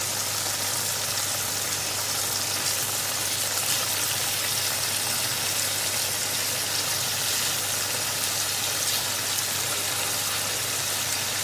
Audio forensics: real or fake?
real